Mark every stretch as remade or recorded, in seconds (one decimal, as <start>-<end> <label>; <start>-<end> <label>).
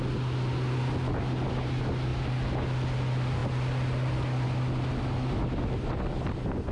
0.0-6.7 recorded